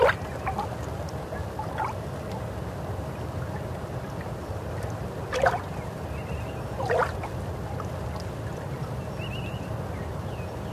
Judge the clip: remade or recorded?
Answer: recorded